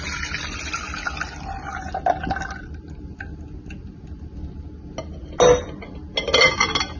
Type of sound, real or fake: real